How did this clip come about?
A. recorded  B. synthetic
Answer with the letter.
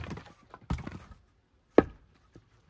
A